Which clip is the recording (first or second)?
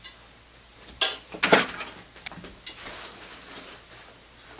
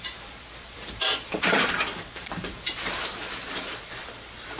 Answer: first